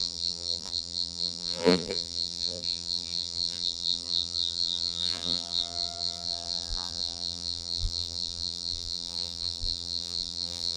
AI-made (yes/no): yes